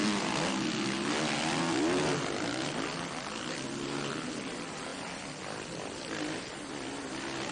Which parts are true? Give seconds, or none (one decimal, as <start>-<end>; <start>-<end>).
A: 0.0-4.9; 6.5-7.5